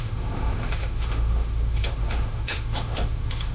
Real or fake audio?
fake